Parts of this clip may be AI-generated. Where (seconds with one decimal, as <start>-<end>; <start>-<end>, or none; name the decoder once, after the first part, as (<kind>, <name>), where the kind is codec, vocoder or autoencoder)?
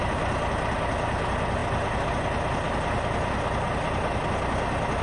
none